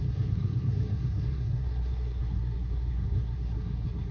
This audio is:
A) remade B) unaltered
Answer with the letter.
A